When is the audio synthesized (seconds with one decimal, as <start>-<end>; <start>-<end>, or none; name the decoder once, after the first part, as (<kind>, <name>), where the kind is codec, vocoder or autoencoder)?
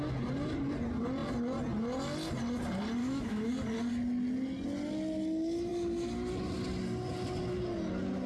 3.0-3.5 (autoencoder, DAC-VAE)